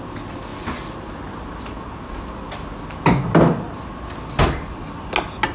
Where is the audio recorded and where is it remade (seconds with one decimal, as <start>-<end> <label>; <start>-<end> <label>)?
0.0-5.5 recorded

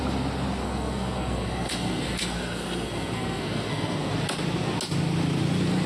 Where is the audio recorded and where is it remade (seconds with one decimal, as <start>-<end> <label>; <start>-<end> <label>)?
0.0-0.6 recorded; 0.6-4.1 remade; 4.1-5.9 recorded

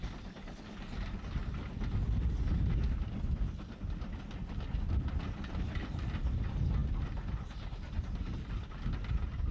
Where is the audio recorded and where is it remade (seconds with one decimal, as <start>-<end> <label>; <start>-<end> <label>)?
0.0-9.5 recorded

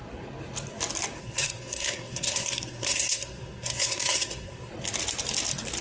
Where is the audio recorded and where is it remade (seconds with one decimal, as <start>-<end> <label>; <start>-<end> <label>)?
0.0-1.2 recorded; 1.2-4.7 remade; 4.7-5.8 recorded

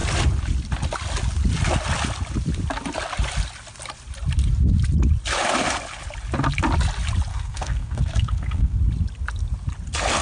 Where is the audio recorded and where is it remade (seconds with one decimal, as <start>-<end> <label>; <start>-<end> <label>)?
0.0-7.3 recorded; 7.3-8.8 remade; 8.8-10.2 recorded

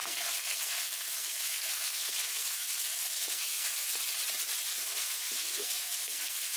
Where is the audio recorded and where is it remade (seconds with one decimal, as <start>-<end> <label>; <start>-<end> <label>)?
0.0-4.0 remade; 4.0-4.7 recorded; 4.7-6.6 remade

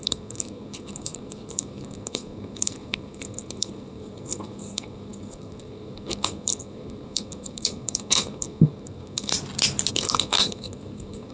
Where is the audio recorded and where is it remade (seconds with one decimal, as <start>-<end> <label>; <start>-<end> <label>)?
0.0-9.3 remade; 9.3-9.9 recorded; 9.9-11.3 remade